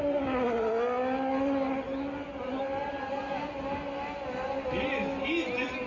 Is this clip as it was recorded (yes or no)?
yes